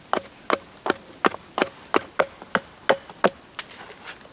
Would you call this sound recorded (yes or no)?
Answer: yes